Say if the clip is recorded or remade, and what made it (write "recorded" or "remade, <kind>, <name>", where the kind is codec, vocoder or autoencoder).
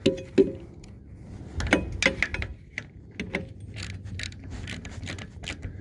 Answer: recorded